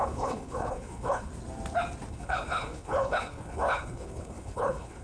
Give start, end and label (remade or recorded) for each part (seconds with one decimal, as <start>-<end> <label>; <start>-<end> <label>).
0.0-1.3 remade; 1.3-2.1 recorded; 2.1-5.0 remade